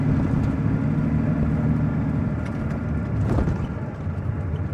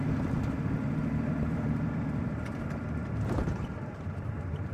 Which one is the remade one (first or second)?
second